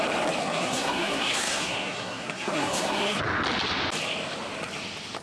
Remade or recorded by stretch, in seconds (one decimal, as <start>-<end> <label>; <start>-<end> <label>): 0.0-0.4 recorded; 0.4-3.2 remade; 3.2-5.2 recorded